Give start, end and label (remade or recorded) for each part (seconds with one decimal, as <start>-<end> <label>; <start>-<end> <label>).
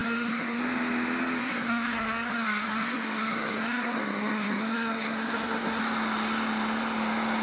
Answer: 0.0-0.6 remade; 0.6-1.4 recorded; 1.4-5.8 remade; 5.8-7.4 recorded